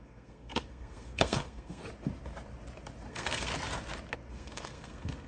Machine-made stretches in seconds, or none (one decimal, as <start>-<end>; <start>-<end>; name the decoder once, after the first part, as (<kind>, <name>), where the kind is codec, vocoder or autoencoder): 0.0-1.8 (codec, SNAC); 3.1-3.5; 4.3-5.3